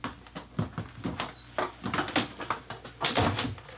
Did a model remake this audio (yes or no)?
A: no